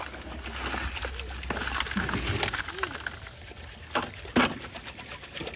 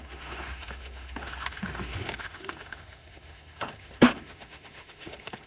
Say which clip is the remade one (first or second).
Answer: second